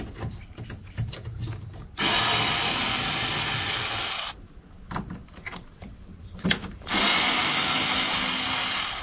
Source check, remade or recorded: recorded